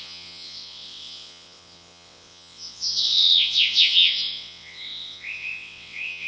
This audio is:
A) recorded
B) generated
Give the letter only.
B